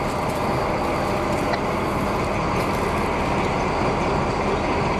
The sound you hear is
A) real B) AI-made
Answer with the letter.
A